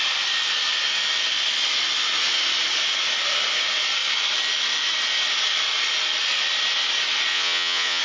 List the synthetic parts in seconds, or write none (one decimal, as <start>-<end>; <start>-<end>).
7.3-8.0